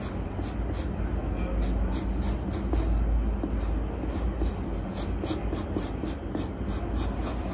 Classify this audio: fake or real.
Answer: real